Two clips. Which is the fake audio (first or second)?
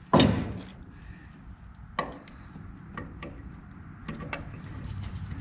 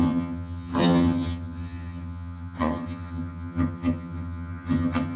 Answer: second